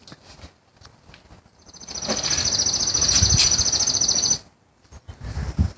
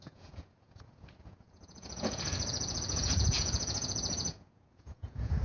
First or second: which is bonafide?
first